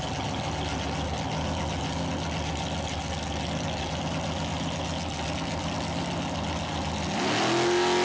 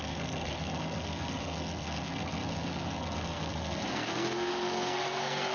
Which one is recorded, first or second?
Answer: first